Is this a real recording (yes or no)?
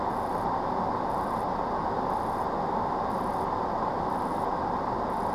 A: yes